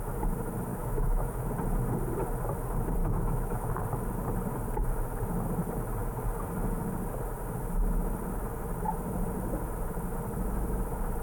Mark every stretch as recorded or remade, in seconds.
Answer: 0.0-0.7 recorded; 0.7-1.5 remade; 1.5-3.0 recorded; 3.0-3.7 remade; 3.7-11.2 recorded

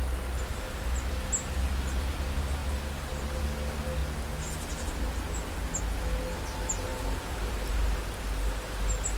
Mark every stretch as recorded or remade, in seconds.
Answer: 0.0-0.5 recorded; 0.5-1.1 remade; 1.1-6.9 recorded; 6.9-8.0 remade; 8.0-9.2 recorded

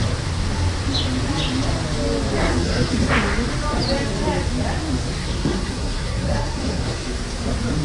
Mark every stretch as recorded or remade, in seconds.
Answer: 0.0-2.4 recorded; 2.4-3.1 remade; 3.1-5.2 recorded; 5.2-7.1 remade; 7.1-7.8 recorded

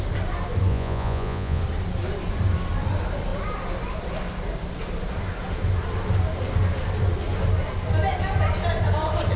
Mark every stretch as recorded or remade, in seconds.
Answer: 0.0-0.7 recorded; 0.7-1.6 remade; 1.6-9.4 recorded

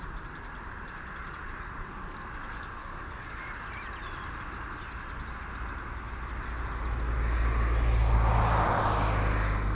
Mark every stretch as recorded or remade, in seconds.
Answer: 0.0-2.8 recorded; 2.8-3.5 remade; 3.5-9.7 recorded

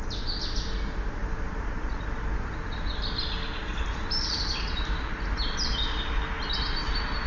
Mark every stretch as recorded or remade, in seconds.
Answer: 0.0-7.3 recorded

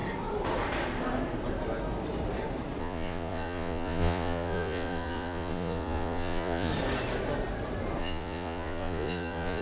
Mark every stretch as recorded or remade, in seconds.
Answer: 0.0-2.8 recorded; 2.8-6.7 remade; 6.7-8.0 recorded; 8.0-9.6 remade

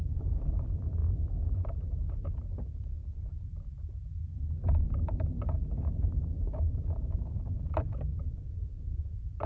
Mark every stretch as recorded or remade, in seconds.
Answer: 0.0-9.5 remade